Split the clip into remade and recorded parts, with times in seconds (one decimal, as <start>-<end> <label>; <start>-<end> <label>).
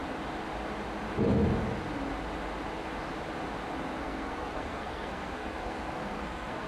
0.0-4.0 recorded; 4.0-6.7 remade